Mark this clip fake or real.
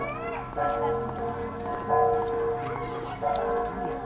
real